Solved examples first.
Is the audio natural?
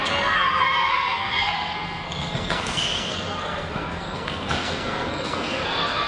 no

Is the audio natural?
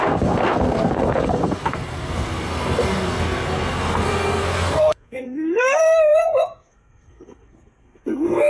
no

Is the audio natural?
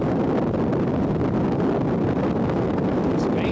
yes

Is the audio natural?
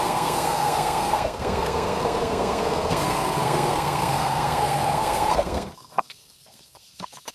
no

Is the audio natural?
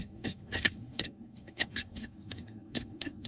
no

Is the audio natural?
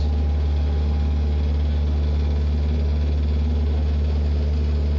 yes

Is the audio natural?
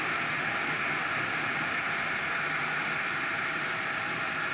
yes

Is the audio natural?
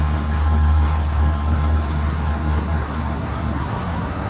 no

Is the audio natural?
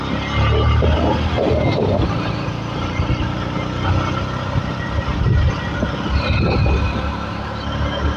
yes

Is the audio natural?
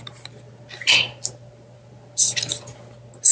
yes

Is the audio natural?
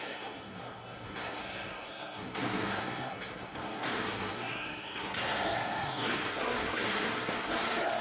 no